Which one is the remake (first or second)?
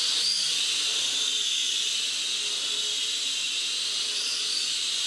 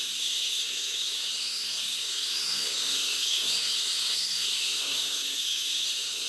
second